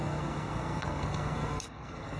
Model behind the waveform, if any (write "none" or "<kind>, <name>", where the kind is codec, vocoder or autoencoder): codec, SNAC